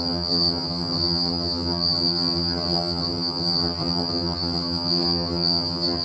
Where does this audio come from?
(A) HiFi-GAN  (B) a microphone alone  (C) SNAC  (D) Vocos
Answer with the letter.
A